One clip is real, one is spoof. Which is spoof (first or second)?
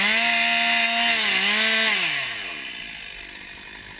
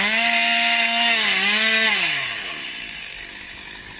second